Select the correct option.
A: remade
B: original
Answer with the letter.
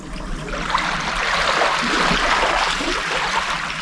B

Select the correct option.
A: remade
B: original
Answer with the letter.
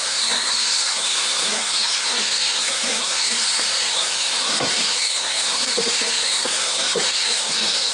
A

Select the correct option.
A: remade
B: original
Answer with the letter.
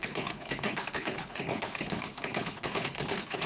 A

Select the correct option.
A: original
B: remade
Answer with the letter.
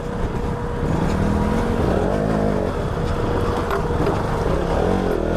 A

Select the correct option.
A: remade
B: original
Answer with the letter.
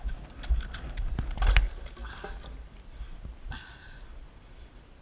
B